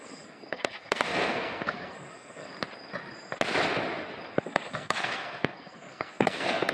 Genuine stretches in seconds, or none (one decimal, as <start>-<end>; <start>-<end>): 2.5-4.3